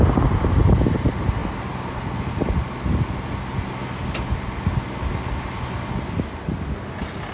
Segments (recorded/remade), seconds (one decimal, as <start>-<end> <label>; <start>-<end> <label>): 0.0-7.3 recorded